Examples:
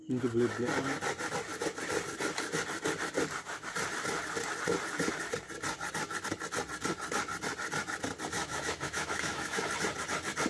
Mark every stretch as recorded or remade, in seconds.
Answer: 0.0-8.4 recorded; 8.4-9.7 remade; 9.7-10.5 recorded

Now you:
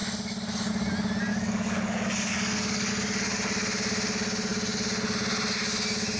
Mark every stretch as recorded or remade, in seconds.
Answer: 0.0-1.3 recorded; 1.3-2.9 remade; 2.9-6.2 recorded

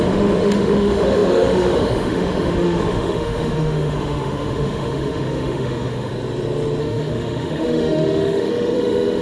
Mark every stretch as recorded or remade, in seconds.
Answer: 0.0-6.1 remade; 6.1-6.8 recorded; 6.8-9.2 remade

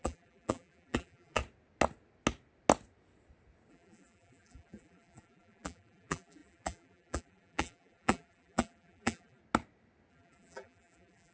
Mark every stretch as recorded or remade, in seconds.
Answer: 0.0-1.4 remade; 1.4-3.7 recorded; 3.7-9.4 remade; 9.4-10.1 recorded; 10.1-11.3 remade

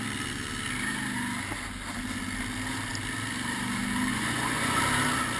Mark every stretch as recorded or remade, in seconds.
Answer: 0.0-4.1 recorded; 4.1-4.8 remade; 4.8-5.4 recorded

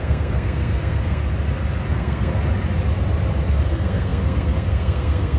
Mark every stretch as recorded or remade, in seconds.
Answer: 0.0-1.2 remade; 1.2-1.9 recorded; 1.9-2.3 remade; 2.3-3.6 recorded; 3.6-5.4 remade